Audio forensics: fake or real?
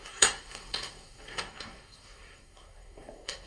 fake